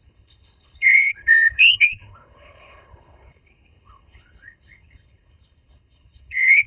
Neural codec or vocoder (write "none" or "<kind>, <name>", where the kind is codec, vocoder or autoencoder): codec, HILCodec